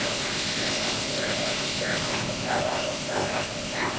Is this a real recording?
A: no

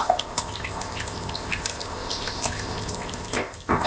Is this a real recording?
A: no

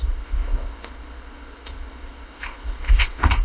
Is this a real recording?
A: no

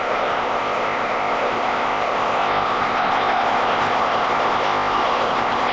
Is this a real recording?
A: no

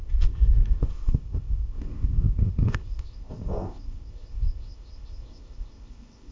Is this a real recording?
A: no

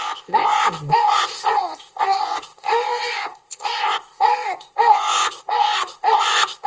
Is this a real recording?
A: no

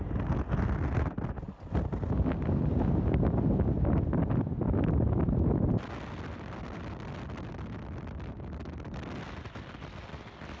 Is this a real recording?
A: yes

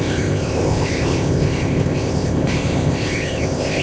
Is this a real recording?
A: no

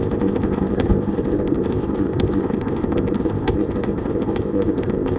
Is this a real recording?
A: no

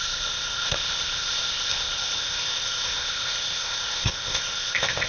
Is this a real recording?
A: no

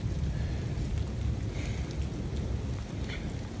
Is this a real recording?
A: yes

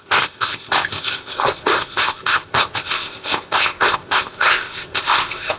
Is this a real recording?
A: no